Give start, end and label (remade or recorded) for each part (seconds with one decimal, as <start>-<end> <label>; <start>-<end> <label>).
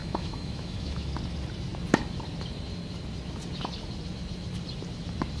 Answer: 0.0-1.1 remade; 1.1-5.4 recorded